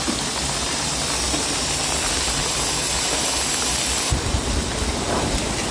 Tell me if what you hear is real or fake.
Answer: real